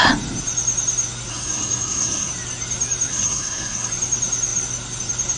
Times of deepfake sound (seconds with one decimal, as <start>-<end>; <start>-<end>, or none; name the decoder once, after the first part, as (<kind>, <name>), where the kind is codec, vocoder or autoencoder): 1.3-2.3 (codec, SNAC); 3.1-3.9